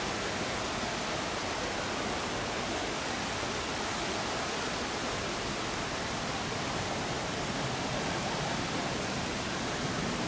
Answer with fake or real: real